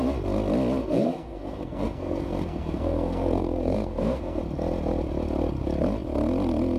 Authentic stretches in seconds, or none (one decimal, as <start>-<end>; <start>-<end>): 0.0-0.8; 4.4-6.8